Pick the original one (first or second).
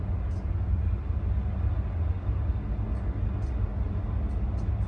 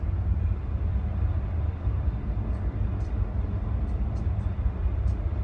first